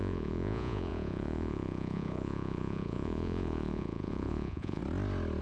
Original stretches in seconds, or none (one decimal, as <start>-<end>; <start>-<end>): 4.8-5.4